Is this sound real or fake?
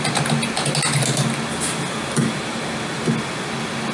real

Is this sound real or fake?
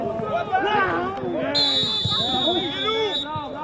real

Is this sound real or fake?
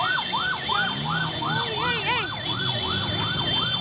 real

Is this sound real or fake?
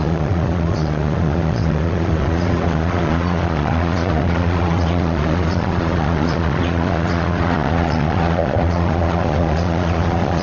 fake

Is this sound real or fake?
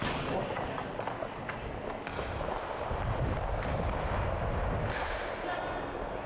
real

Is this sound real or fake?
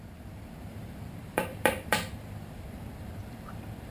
fake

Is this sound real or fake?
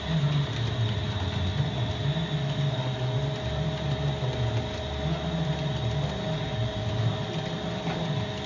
real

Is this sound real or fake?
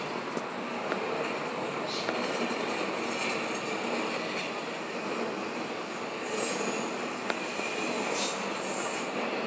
real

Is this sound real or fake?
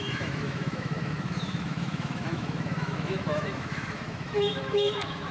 fake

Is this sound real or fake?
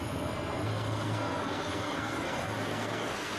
fake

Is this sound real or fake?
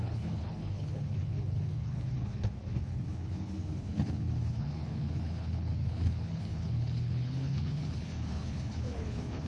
fake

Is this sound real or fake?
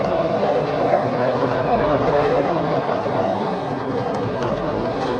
fake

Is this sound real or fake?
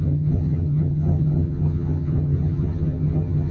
fake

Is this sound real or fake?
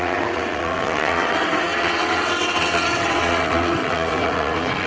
fake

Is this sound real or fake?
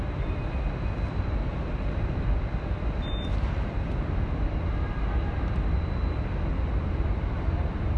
real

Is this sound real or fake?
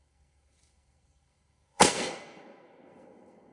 fake